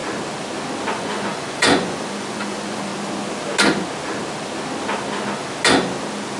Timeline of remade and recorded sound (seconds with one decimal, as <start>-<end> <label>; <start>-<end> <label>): 0.0-0.9 recorded; 0.9-2.9 remade; 2.9-6.4 recorded